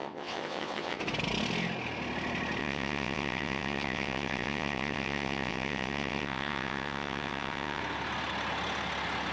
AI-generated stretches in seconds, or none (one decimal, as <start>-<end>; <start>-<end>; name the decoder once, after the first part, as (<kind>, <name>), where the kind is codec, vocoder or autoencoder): 0.0-1.0 (vocoder, WaveNeXt); 2.6-7.8